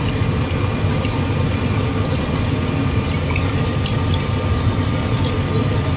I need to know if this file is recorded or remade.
recorded